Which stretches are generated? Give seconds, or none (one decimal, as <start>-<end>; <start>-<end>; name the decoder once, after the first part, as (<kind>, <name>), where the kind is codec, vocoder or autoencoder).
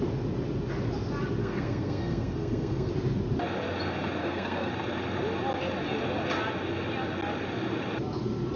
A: 1.4-2.9 (codec, SNAC); 4.2-4.7